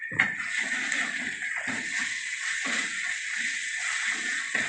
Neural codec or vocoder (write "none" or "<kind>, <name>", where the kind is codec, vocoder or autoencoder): vocoder, Vocos